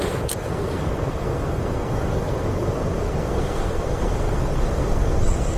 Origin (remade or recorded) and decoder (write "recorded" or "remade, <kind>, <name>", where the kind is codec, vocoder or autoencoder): remade, codec, SNAC